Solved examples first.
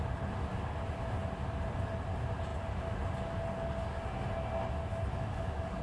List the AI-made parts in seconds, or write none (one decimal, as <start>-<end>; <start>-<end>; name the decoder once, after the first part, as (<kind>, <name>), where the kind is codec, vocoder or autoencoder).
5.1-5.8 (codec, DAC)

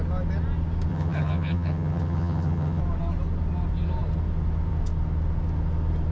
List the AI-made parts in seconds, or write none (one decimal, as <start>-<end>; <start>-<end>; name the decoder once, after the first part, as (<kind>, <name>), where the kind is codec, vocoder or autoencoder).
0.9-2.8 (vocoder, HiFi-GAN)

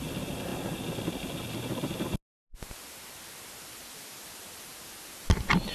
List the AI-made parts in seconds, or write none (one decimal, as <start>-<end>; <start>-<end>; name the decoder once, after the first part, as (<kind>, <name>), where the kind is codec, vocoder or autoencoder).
none

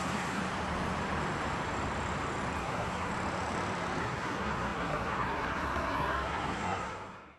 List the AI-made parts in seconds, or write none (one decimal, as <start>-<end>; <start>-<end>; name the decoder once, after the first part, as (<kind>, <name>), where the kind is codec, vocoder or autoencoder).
0.0-0.4 (codec, SNAC); 2.6-3.1; 4.0-7.4

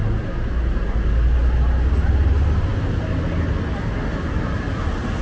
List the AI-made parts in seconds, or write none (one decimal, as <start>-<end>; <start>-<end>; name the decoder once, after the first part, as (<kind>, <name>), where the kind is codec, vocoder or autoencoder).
none

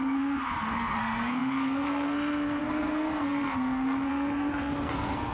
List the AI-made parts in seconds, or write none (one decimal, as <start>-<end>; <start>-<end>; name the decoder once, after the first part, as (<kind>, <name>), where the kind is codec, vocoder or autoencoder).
0.0-5.3 (codec, SNAC)